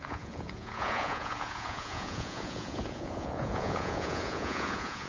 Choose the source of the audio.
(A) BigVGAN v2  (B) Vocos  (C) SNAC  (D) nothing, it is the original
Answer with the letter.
B